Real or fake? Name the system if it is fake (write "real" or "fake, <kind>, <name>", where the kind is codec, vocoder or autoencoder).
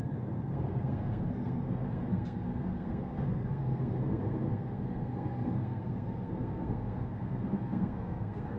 fake, codec, SNAC